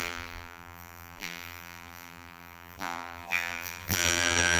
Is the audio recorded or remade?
remade